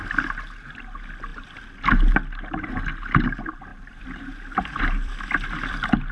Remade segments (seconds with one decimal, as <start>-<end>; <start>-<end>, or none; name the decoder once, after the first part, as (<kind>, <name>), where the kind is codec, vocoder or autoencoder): 3.7-6.1 (vocoder, BigVGAN v2)